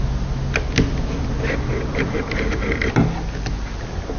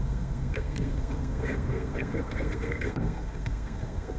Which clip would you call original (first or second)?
first